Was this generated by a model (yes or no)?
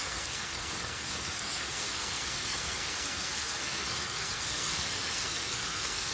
yes